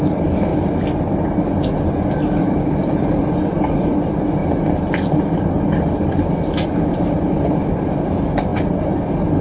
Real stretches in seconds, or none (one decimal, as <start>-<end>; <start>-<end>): 0.0-9.4